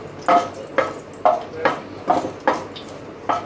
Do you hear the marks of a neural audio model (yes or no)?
no